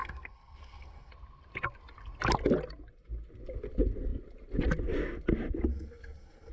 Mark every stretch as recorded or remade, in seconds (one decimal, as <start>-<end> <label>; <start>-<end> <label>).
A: 0.0-1.1 remade; 1.1-5.7 recorded; 5.7-6.5 remade